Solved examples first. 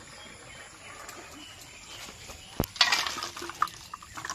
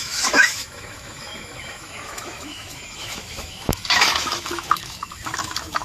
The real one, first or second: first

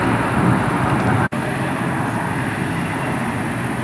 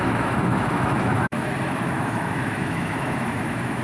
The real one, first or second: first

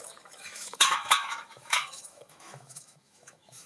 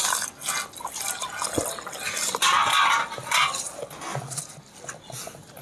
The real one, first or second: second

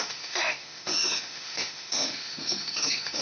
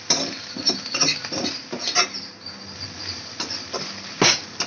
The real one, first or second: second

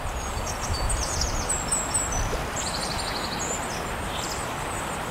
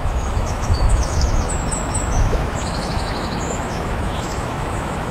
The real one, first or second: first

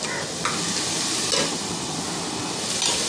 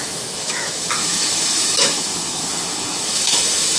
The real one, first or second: first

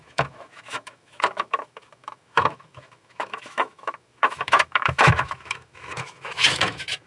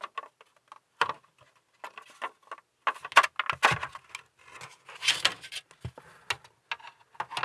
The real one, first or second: second